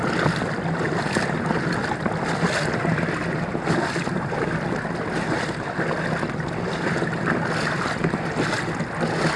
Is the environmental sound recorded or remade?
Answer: recorded